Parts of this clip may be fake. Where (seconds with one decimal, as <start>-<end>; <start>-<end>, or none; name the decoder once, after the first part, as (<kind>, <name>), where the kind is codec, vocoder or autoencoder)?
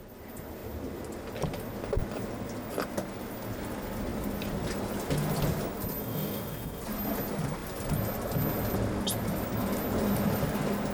6.0-6.8 (codec, DAC)